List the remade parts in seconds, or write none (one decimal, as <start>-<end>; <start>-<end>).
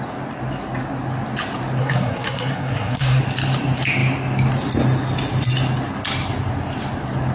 1.8-3.2